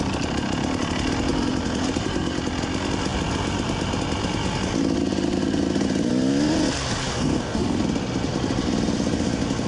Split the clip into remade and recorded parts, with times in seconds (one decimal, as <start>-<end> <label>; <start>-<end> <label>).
0.0-7.1 recorded; 7.1-7.8 remade; 7.8-9.7 recorded